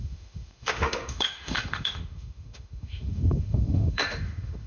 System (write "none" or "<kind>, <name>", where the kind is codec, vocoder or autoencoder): autoencoder, DAC-VAE